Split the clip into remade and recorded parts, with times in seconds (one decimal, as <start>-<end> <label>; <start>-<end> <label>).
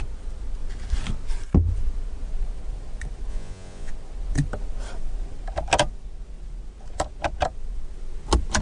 0.0-3.3 recorded; 3.3-3.9 remade; 3.9-8.6 recorded